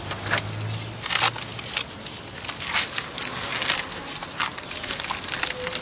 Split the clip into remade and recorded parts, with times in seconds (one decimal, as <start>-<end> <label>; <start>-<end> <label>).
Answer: 0.0-5.8 recorded